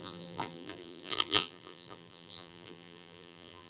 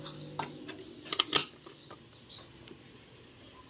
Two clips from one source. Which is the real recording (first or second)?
second